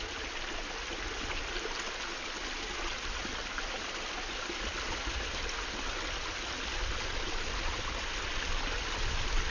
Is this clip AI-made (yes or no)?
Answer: no